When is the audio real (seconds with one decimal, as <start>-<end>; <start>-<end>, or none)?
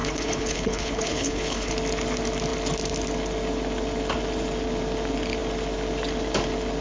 1.7-6.8